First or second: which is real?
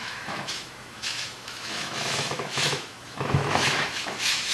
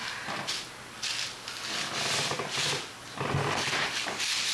second